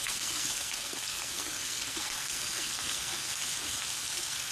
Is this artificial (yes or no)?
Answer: yes